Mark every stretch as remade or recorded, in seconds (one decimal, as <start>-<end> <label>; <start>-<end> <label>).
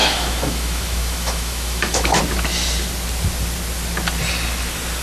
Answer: 0.0-2.2 remade; 2.2-5.0 recorded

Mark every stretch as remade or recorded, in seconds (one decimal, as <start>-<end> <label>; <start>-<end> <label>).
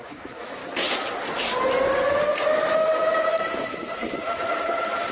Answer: 0.0-0.6 remade; 0.6-2.6 recorded; 2.6-5.1 remade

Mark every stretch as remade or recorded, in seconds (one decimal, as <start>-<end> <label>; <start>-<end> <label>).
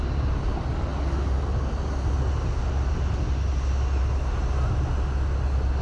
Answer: 0.0-5.8 recorded